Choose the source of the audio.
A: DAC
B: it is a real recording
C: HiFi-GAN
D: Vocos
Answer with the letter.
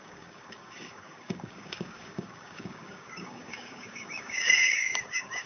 A